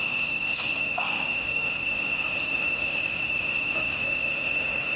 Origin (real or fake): fake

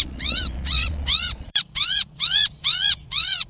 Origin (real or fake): fake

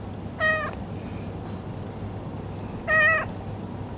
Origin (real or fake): real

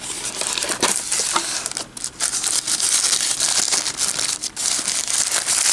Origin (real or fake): real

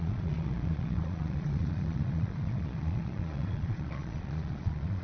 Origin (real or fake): fake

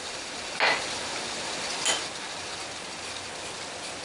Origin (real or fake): real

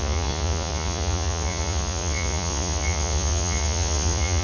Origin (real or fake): fake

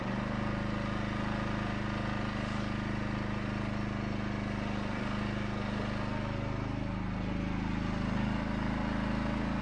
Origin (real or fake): real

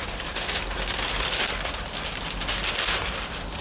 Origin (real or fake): real